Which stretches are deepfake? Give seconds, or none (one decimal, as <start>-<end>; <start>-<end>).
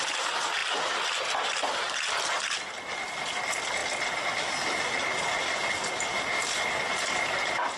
none